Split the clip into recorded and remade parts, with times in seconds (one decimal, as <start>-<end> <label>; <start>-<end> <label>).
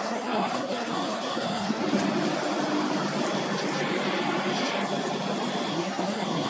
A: 0.0-1.8 remade; 1.8-5.7 recorded; 5.7-6.5 remade